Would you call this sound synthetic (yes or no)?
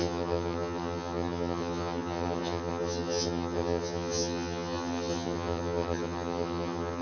yes